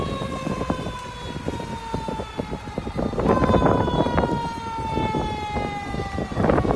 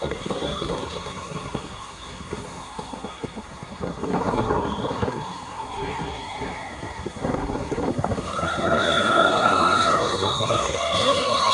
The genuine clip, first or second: first